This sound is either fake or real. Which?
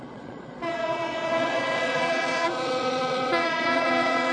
fake